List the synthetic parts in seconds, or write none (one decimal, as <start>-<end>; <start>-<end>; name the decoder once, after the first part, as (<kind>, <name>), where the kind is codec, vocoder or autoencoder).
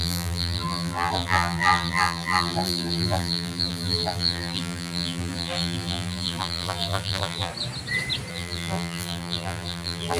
0.0-7.5 (vocoder, BigVGAN v2); 8.3-10.2